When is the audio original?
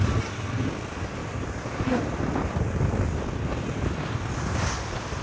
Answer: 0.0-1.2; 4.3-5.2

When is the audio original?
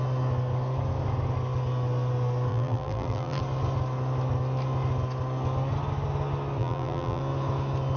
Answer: 0.0-2.5; 3.4-6.6; 7.2-8.0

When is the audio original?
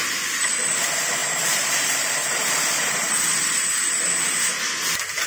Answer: 0.0-1.2; 4.4-5.3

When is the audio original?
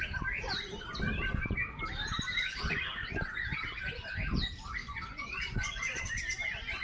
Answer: 0.0-4.8; 6.0-6.8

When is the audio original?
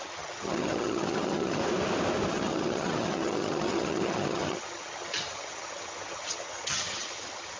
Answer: 1.6-2.3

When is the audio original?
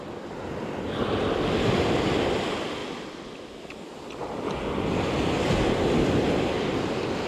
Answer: 0.0-7.3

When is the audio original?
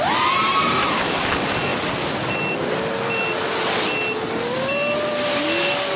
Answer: 0.0-6.0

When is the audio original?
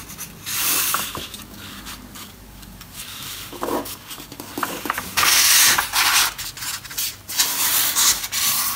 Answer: 0.0-0.6; 5.5-8.8